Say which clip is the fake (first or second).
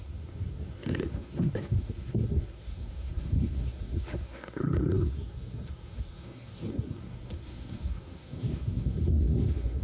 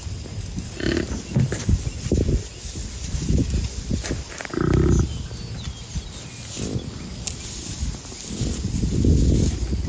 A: first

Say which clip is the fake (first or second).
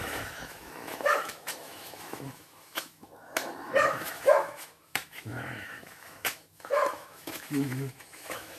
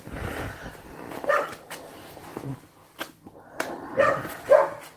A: first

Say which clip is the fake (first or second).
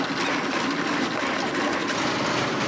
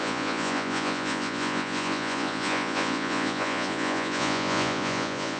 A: second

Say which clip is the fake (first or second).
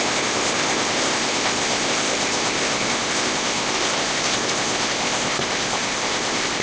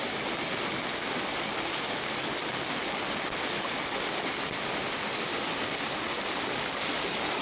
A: first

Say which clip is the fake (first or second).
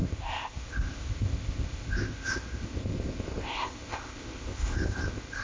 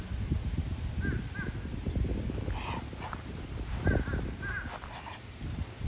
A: first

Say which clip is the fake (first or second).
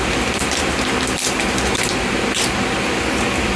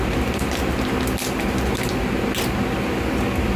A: first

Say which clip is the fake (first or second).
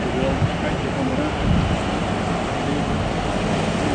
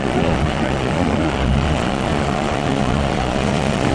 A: second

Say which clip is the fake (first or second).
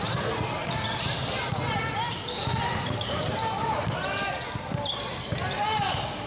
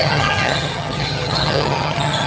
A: second